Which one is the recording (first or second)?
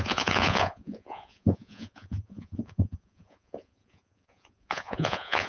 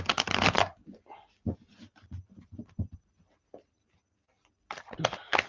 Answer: second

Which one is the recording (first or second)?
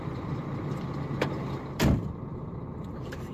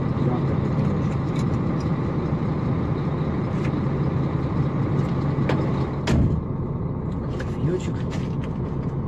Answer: second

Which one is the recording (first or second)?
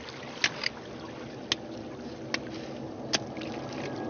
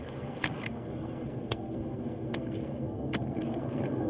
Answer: first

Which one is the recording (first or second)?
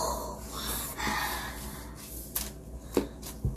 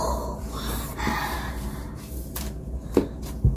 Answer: first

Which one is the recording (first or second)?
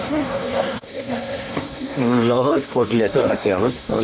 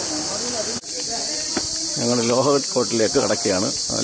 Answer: second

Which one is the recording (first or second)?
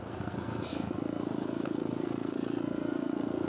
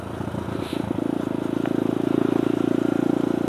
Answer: second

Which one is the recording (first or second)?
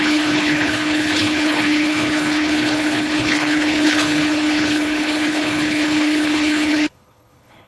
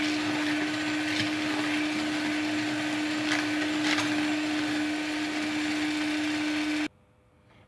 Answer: second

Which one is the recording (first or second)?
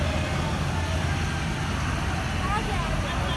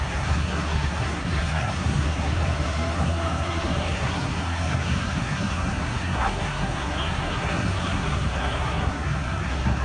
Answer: first